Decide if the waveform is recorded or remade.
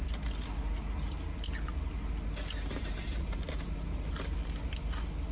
recorded